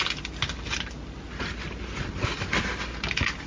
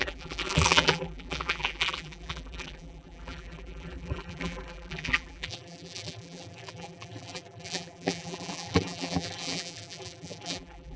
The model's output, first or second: second